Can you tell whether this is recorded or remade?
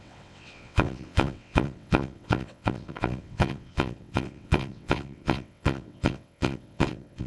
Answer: remade